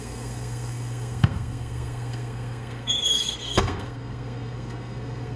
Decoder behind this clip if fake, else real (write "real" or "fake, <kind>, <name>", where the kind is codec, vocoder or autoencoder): fake, codec, SNAC